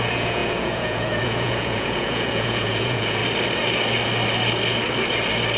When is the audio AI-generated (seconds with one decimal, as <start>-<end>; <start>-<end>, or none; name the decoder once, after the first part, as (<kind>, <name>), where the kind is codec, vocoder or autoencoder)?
0.0-3.2 (vocoder, Vocos)